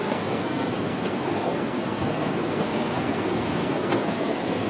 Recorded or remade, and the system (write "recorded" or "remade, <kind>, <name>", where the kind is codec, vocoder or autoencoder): remade, codec, SNAC